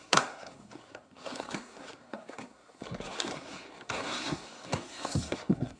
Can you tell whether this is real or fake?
fake